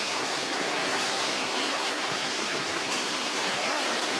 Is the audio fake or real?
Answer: fake